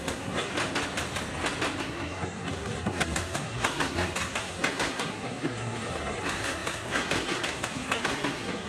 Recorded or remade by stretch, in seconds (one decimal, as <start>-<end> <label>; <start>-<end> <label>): 0.0-0.5 remade; 0.5-1.8 recorded; 1.8-8.7 remade